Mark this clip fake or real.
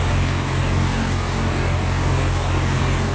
fake